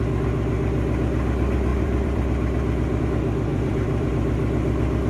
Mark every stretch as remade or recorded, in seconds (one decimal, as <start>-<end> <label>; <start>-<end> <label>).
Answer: 0.0-1.7 recorded; 1.7-3.0 remade; 3.0-3.5 recorded; 3.5-4.1 remade; 4.1-5.1 recorded